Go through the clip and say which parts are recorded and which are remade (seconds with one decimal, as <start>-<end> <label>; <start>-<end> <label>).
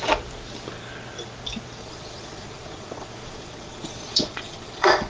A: 0.0-1.8 recorded; 1.8-5.1 remade